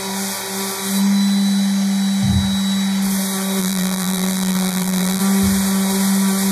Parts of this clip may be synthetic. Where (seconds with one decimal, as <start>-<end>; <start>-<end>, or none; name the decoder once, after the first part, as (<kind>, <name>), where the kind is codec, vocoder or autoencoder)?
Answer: 3.6-5.2 (vocoder, BigVGAN v2)